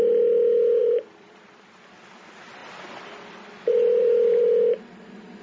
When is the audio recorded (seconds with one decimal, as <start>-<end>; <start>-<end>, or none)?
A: 0.0-0.8; 2.0-2.6; 4.4-5.4